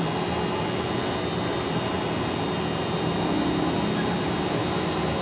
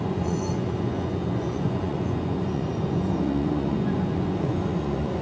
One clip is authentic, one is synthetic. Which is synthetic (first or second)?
second